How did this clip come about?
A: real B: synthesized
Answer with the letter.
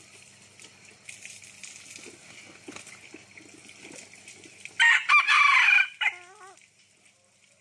A